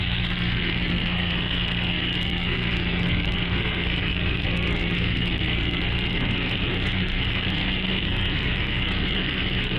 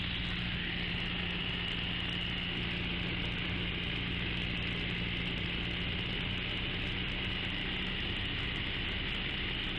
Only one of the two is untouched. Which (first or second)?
second